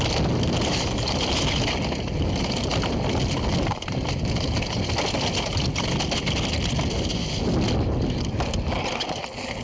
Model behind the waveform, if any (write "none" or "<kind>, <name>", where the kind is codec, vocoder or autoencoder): none